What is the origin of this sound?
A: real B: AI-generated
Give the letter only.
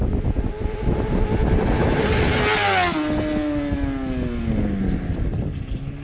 A